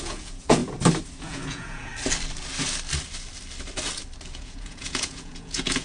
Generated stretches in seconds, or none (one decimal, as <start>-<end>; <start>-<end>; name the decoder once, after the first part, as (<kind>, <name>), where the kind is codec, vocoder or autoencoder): 0.0-0.6 (vocoder, Vocos); 1.2-1.9; 4.4-5.8